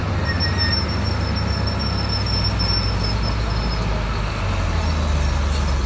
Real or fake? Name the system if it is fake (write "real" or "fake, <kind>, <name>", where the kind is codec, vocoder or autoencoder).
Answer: real